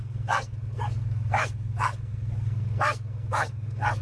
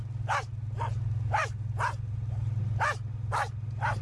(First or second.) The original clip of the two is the second